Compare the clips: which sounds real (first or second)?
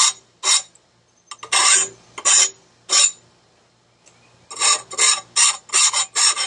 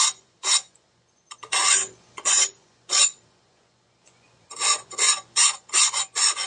first